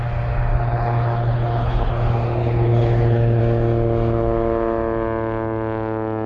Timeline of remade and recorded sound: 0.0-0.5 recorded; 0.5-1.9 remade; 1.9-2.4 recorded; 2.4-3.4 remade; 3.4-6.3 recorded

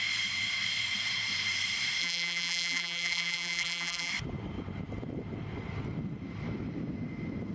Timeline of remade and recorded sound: 0.0-2.0 recorded; 2.0-4.1 remade; 4.1-7.5 recorded

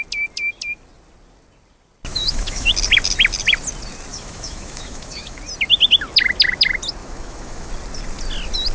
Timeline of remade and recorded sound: 0.0-2.1 recorded; 2.1-2.7 remade; 2.7-4.1 recorded; 4.1-5.4 remade; 5.4-7.0 recorded; 7.0-7.7 remade; 7.7-8.7 recorded